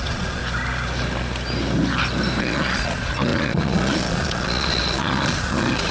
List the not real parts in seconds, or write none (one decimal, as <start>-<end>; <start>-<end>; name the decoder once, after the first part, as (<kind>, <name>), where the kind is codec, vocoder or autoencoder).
0.0-0.4 (vocoder, Vocos); 2.4-5.9